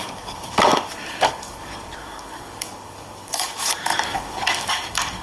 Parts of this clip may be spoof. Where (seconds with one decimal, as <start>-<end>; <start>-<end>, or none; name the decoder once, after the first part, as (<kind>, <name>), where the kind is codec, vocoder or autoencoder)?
0.0-5.2 (codec, DAC)